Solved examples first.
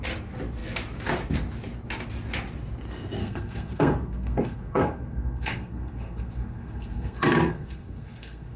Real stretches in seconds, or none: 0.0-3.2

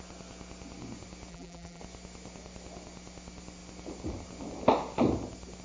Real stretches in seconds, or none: 0.0-1.3; 1.8-5.6

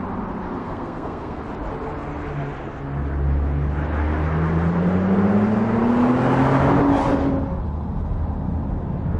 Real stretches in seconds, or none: 0.0-0.6; 1.4-9.2

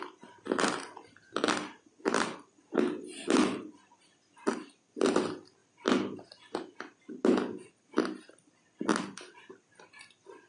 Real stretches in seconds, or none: 0.0-3.2; 3.7-8.9; 9.4-10.5

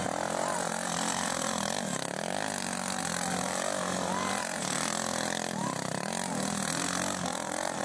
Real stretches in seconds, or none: 0.0-7.8

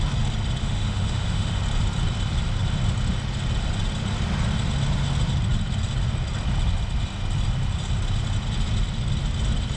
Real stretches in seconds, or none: 0.0-0.6; 1.6-9.8

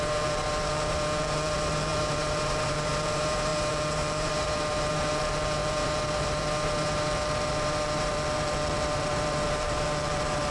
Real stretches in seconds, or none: none